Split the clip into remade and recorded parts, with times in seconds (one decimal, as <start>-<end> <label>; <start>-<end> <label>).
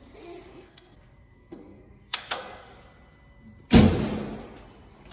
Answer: 0.0-0.5 recorded; 0.5-2.8 remade; 2.8-5.1 recorded